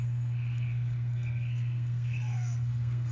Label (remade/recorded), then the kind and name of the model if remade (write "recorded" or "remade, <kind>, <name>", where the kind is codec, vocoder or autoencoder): remade, codec, SNAC